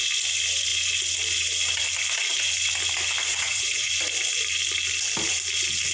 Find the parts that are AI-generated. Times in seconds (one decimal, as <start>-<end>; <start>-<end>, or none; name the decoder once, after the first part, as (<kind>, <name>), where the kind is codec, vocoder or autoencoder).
3.3-3.9 (vocoder, WaveNeXt)